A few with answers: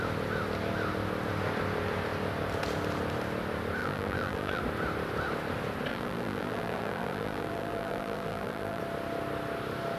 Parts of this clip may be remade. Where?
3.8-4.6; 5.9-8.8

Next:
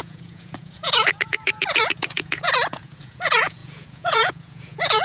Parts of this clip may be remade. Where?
0.0-5.0

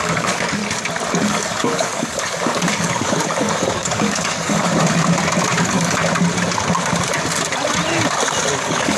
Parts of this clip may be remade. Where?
0.0-0.6; 1.1-4.7; 5.6-6.0; 8.6-9.0

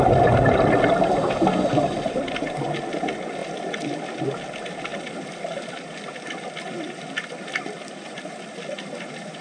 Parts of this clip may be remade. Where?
0.0-9.4